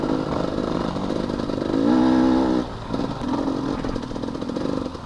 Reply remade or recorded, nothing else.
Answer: recorded